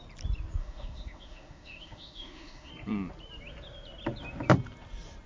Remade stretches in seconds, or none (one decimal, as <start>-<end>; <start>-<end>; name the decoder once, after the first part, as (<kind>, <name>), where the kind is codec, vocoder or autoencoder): 0.6-2.7 (autoencoder, DAC-VAE)